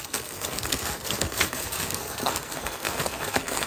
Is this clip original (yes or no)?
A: no